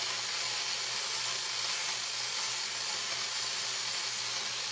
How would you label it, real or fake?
real